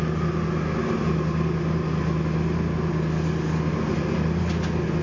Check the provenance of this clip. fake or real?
real